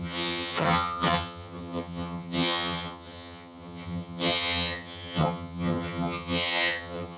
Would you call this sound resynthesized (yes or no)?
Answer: yes